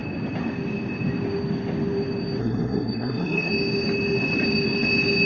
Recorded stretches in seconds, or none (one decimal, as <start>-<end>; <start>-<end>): 0.0-2.4; 3.5-5.3